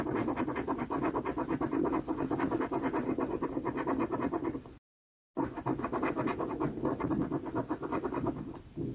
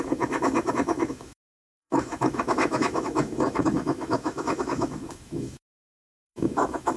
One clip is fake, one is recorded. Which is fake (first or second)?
second